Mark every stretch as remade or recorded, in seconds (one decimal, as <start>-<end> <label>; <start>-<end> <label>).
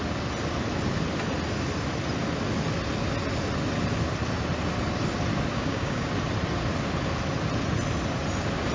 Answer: 0.0-5.5 recorded; 5.5-6.1 remade; 6.1-8.7 recorded